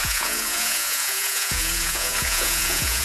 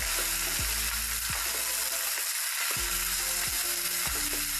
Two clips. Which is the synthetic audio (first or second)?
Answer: first